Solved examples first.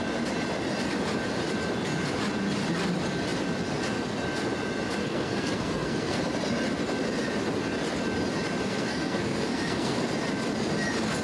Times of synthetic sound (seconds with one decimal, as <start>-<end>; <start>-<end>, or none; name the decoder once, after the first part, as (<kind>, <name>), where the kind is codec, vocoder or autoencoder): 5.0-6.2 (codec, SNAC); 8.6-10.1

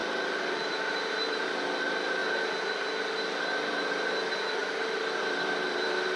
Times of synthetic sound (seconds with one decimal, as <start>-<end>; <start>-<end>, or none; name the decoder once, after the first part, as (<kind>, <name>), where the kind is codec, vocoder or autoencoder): 0.0-2.2 (vocoder, BigVGAN v2); 3.4-4.6; 5.2-6.2

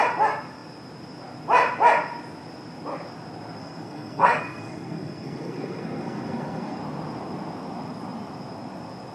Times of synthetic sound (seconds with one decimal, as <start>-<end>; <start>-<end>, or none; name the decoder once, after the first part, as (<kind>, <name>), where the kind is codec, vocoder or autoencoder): 3.6-6.8 (codec, SNAC)

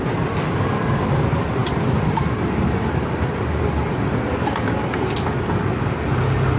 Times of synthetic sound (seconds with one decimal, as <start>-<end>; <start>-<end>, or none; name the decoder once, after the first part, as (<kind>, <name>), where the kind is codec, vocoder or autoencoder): none

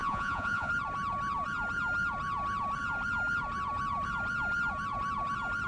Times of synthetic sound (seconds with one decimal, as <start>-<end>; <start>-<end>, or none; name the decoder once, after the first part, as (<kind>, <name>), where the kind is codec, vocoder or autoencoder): 0.0-0.7 (vocoder, Vocos)

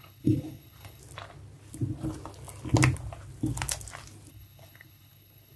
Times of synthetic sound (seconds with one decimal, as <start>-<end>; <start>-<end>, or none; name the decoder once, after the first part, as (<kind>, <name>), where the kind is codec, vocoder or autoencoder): 0.0-1.0 (codec, HILCodec); 4.3-5.6